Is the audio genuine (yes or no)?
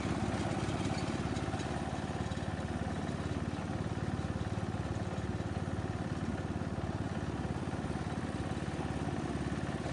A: yes